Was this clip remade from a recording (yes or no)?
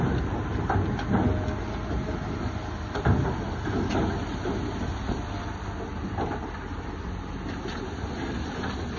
no